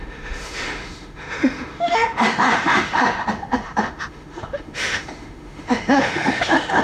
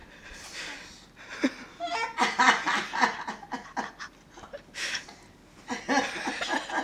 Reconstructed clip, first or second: first